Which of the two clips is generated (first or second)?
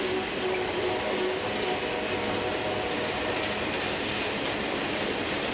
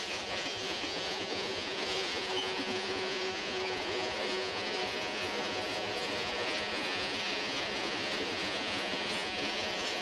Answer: second